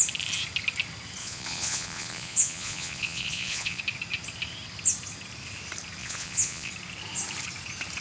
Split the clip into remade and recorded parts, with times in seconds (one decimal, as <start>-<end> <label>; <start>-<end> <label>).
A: 0.0-1.2 recorded; 1.2-3.8 remade; 3.8-6.0 recorded; 6.0-6.7 remade; 6.7-8.0 recorded